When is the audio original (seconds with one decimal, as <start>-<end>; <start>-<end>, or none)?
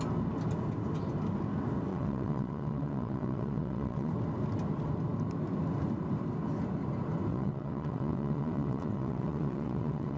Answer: 0.0-1.9; 4.1-7.3